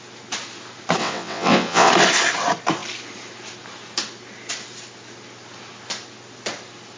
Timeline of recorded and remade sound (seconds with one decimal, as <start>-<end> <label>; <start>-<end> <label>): 0.0-1.0 recorded; 1.0-1.9 remade; 1.9-7.0 recorded